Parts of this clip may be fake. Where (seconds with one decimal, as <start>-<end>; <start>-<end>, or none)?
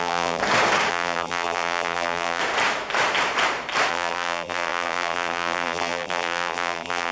0.0-0.4; 0.9-2.4; 3.9-7.1